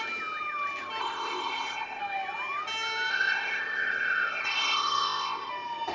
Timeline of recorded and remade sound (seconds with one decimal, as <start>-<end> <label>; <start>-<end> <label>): 0.0-1.0 recorded; 1.0-2.0 remade; 2.0-3.1 recorded; 3.1-5.5 remade; 5.5-5.9 recorded